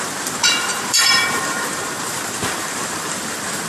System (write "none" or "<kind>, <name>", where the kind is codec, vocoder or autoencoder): vocoder, BigVGAN v2